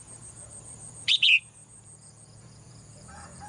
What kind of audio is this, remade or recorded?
remade